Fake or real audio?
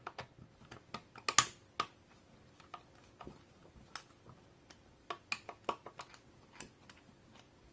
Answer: real